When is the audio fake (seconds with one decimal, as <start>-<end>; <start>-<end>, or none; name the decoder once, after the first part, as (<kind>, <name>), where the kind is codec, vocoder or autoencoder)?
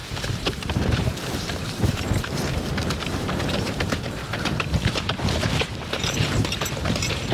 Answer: 0.8-7.3 (vocoder, BigVGAN v2)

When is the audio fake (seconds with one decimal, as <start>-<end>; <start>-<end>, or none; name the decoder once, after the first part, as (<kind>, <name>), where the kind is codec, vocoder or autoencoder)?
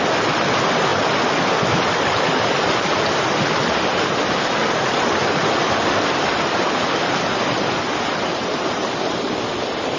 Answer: none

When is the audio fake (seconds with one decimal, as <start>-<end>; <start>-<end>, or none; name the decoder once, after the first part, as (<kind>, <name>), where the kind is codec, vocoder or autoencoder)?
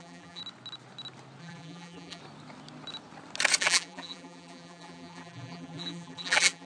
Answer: 0.0-0.4 (vocoder, BigVGAN v2); 1.4-2.2; 3.6-6.7